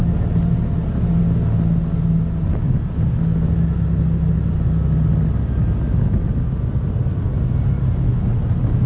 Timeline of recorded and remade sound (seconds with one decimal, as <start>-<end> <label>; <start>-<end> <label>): 0.0-8.9 recorded